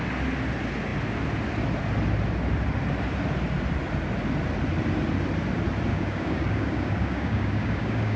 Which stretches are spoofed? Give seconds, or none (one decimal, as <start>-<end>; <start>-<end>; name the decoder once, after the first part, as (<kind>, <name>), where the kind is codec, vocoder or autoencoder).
5.9-8.2 (codec, DAC)

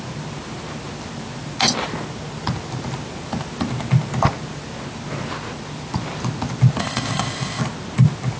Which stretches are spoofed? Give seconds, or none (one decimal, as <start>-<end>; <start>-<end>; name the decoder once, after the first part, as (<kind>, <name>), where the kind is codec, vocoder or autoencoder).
6.8-7.6 (codec, ZipCodec)

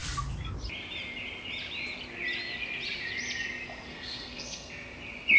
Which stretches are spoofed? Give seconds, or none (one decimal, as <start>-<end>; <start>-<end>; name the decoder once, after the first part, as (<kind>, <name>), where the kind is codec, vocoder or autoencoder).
3.9-4.7 (codec, SNAC)

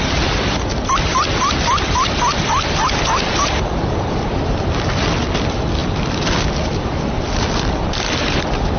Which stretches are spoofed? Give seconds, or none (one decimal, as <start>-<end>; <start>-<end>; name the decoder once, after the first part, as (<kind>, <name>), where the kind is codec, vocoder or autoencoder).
0.0-8.8 (vocoder, BigVGAN v2)

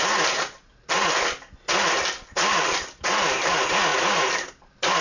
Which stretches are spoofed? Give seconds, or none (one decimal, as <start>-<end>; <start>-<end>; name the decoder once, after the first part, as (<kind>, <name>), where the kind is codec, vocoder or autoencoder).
none

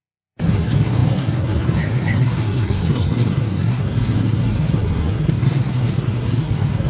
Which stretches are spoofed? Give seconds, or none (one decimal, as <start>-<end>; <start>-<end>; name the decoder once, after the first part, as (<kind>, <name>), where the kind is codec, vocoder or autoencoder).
0.0-6.9 (codec, SNAC)

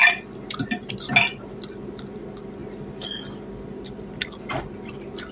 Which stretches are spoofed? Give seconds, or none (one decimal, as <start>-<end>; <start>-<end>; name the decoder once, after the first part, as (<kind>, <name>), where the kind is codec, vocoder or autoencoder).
none